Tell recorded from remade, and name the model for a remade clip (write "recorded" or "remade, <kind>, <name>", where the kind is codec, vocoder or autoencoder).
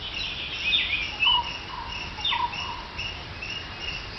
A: recorded